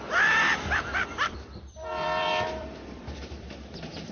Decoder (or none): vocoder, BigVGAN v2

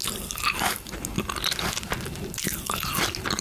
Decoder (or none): none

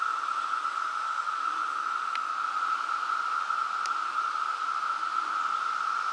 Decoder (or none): none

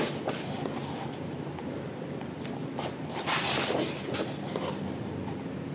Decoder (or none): none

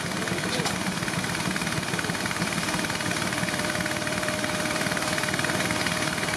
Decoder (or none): vocoder, BigVGAN v2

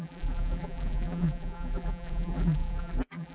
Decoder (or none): vocoder, BigVGAN v2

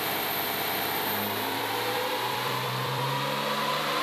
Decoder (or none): vocoder, BigVGAN v2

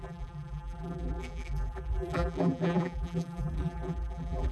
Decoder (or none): vocoder, BigVGAN v2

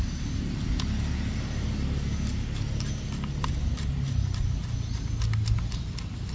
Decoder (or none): none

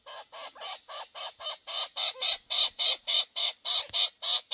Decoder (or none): none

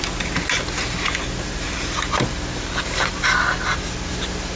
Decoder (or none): none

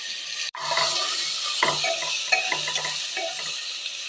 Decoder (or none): none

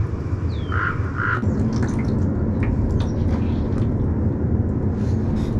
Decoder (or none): none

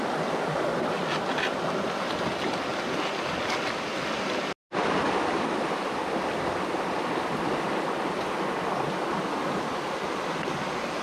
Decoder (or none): none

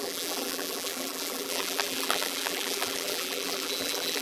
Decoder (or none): vocoder, BigVGAN v2